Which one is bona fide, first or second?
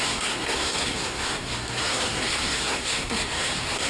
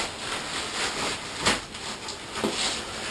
second